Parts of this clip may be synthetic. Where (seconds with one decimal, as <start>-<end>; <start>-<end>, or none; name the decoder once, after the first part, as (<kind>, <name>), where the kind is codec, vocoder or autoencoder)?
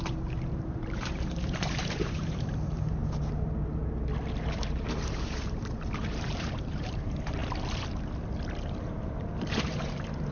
0.0-3.8 (vocoder, BigVGAN v2); 4.4-7.4; 9.5-10.3